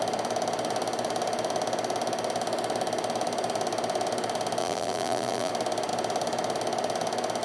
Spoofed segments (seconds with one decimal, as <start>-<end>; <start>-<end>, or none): 4.6-5.5

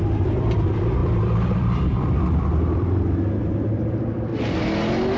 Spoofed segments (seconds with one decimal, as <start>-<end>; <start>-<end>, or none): 0.0-4.3